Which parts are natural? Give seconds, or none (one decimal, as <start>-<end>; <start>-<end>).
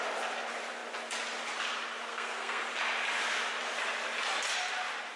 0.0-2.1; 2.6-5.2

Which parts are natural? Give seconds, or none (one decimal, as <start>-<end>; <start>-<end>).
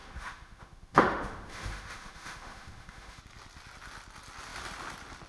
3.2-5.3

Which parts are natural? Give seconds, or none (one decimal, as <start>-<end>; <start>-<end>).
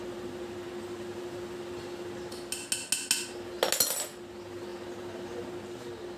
0.0-6.2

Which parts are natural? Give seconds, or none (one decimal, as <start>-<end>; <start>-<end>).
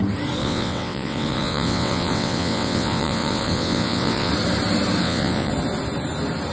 0.0-0.4; 4.3-5.0; 5.5-6.5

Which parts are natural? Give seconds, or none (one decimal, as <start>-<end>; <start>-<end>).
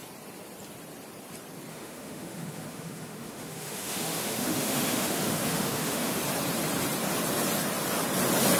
0.0-1.7; 6.2-8.6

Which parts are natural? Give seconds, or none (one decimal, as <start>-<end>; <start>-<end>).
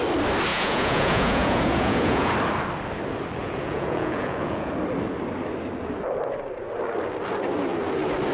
0.0-0.5; 2.3-3.4; 4.7-8.3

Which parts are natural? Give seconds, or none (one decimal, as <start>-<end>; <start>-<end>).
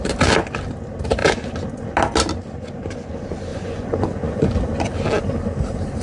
0.0-3.5; 4.5-6.0